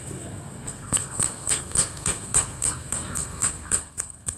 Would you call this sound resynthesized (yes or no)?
yes